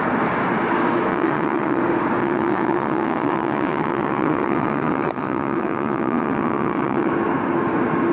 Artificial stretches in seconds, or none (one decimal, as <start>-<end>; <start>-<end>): 1.1-1.8; 2.2-7.1